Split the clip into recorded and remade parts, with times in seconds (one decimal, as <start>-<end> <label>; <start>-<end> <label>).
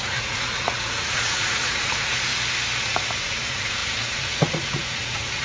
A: 0.0-2.3 remade; 2.3-2.8 recorded; 2.8-5.4 remade